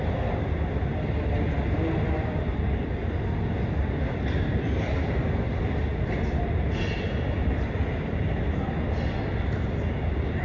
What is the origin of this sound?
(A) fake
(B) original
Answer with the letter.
B